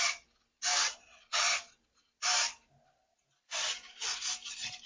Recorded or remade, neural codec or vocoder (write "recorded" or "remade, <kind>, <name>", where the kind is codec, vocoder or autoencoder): recorded